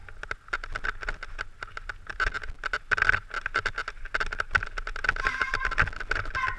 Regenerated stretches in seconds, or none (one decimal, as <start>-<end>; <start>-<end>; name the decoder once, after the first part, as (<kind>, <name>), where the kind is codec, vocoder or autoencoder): none